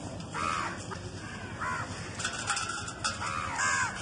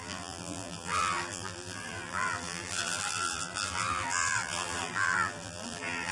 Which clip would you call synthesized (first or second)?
second